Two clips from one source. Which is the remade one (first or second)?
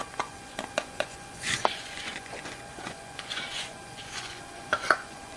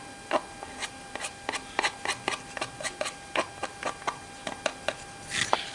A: first